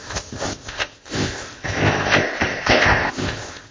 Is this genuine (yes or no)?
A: no